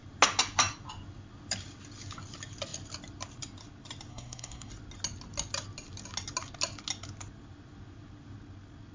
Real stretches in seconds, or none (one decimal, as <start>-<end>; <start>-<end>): 0.0-4.1; 4.7-8.9